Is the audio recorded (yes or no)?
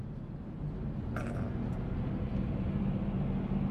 yes